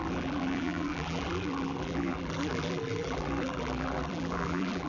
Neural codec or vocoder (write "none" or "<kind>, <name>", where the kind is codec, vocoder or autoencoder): vocoder, BigVGAN v2